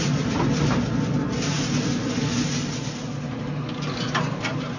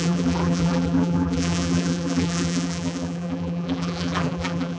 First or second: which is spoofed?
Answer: second